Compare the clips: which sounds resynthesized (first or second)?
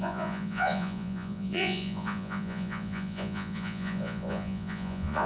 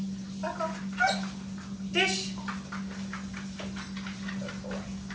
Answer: first